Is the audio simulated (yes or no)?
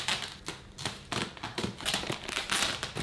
no